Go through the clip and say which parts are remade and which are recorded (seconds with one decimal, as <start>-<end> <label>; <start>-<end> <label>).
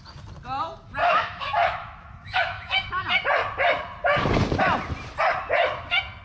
0.0-1.0 recorded; 1.0-2.9 remade; 2.9-6.2 recorded